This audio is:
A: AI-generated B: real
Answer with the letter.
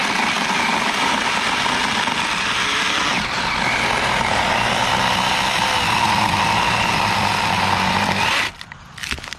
B